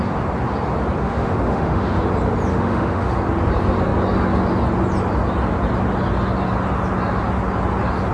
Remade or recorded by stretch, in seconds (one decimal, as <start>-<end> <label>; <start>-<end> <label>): 0.0-1.0 recorded; 1.0-2.0 remade; 2.0-2.5 recorded; 2.5-3.1 remade; 3.1-8.1 recorded